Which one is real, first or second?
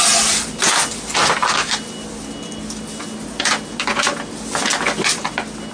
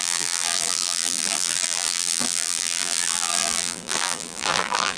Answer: first